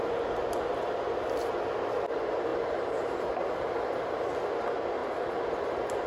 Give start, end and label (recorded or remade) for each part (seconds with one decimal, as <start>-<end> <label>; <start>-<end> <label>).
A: 0.0-2.5 recorded; 2.5-3.7 remade; 3.7-5.0 recorded; 5.0-5.6 remade; 5.6-6.1 recorded